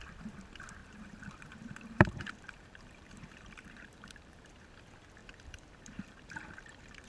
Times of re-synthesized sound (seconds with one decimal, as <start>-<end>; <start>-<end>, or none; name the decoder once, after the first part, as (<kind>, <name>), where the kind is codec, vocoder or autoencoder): 0.8-4.7 (vocoder, BigVGAN v2); 5.2-7.1

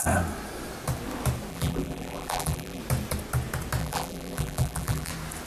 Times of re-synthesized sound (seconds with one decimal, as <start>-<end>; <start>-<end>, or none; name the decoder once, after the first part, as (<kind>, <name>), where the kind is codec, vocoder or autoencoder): 1.5-2.8 (vocoder, BigVGAN v2); 3.8-5.1

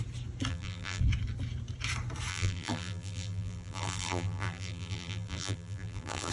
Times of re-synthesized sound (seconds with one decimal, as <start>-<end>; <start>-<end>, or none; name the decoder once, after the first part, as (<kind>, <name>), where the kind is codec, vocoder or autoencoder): 0.5-1.0 (vocoder, BigVGAN v2); 2.3-6.3

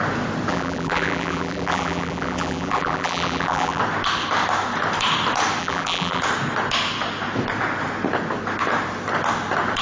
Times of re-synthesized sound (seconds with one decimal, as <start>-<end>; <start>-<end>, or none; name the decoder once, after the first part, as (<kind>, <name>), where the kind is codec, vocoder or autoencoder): 0.5-3.8 (vocoder, BigVGAN v2); 5.6-6.2

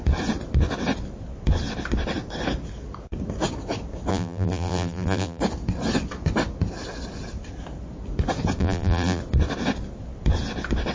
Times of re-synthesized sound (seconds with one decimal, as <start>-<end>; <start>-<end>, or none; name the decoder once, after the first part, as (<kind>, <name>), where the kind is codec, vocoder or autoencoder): 4.1-5.4 (vocoder, BigVGAN v2); 8.6-9.2

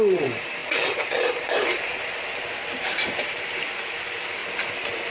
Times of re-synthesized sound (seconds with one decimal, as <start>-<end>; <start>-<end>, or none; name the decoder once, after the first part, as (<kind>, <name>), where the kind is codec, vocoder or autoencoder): 0.0-0.6 (vocoder, BigVGAN v2); 1.4-1.9; 2.7-4.4

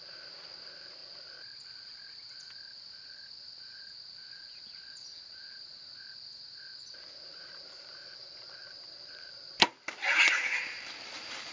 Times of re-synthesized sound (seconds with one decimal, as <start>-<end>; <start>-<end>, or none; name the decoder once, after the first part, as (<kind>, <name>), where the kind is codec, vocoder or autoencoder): 0.0-1.0 (vocoder, BigVGAN v2); 4.1-5.9; 6.8-11.5